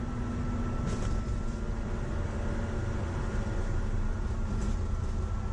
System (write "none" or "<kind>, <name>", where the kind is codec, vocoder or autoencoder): none